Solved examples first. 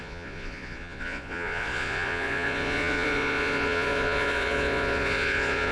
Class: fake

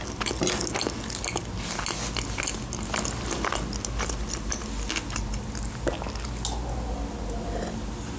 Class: real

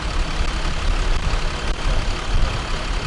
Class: real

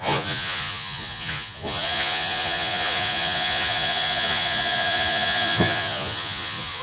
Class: fake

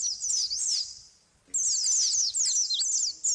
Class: real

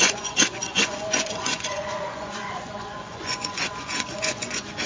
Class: fake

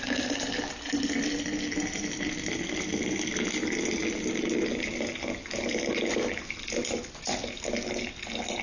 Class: real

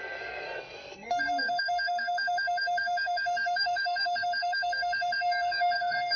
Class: fake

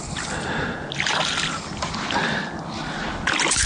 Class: real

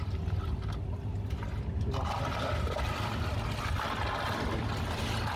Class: real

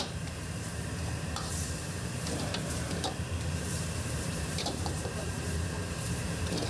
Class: fake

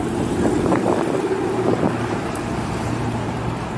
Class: fake